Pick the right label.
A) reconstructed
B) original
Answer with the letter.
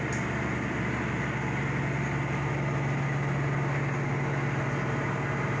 B